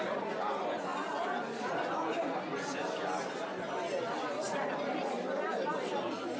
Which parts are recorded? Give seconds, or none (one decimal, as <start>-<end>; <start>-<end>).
0.0-6.4

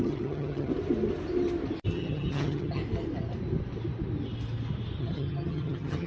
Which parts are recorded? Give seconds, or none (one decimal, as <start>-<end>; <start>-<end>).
0.7-1.9; 2.8-5.0

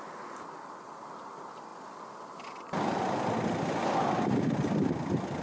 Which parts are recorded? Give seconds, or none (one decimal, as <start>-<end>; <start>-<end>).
0.0-5.4

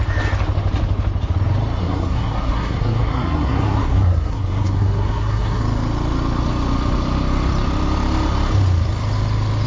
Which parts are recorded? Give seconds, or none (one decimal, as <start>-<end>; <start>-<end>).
0.0-1.8; 5.6-9.7

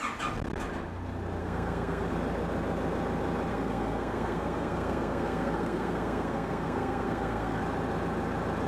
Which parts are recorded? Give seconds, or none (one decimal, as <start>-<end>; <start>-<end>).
0.0-1.4; 2.1-3.5; 7.6-8.7

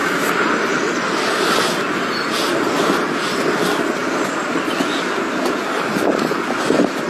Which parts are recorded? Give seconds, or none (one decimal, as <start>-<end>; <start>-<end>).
0.0-7.1

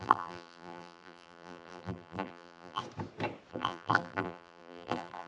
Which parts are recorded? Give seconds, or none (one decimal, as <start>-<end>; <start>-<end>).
2.8-3.5